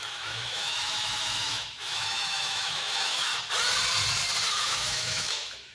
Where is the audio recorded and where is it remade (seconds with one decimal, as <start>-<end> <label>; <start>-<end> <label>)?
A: 0.0-3.3 remade; 3.3-4.5 recorded; 4.5-5.7 remade